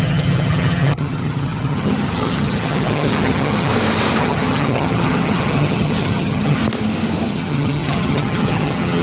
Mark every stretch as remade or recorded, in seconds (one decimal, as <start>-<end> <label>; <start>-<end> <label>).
0.0-3.7 remade; 3.7-4.2 recorded; 4.2-6.6 remade; 6.6-7.3 recorded; 7.3-9.0 remade